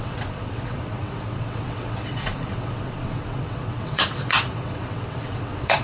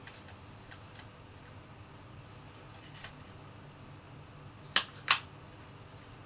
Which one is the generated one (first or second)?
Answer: first